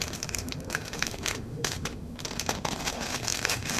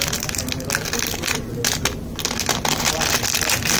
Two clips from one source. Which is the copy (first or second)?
first